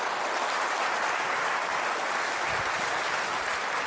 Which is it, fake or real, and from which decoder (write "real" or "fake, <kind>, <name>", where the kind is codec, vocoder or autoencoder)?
real